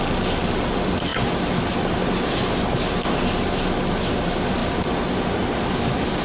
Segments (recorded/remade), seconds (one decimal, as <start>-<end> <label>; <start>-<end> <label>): 0.0-6.2 recorded